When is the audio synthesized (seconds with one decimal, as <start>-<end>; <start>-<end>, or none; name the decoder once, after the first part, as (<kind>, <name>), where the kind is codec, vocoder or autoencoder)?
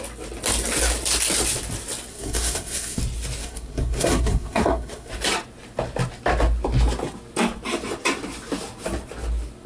2.1-3.0 (codec, SNAC); 3.4-5.1